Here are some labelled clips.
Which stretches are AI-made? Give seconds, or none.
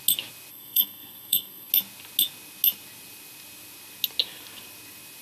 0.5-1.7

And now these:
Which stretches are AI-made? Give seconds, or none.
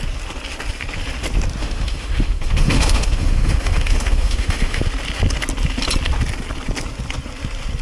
1.6-4.8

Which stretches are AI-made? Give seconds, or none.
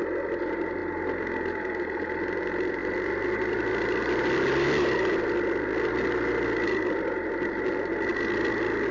none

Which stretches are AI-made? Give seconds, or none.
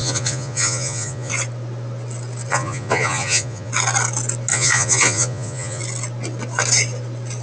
0.0-1.3; 2.5-3.7; 4.5-5.8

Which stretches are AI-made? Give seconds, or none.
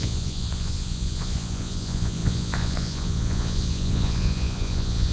0.0-5.1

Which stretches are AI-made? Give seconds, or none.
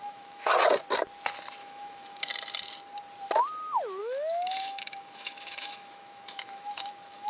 0.0-0.5; 1.6-2.3; 4.0-7.3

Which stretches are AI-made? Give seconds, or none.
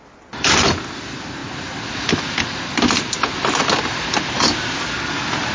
none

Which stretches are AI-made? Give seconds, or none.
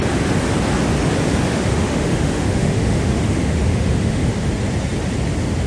1.5-4.5